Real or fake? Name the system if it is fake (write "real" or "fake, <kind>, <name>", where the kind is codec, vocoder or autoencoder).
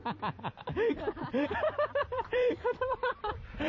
fake, vocoder, BigVGAN v2